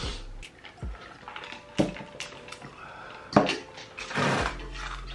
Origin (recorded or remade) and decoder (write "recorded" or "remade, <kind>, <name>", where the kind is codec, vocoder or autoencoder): recorded